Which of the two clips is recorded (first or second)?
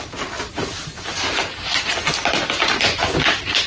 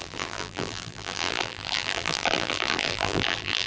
first